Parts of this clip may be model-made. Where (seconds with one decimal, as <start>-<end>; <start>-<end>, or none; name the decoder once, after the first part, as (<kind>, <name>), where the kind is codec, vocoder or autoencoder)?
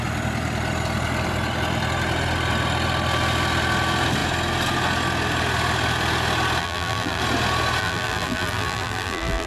6.6-7.2 (vocoder, BigVGAN v2); 7.8-9.5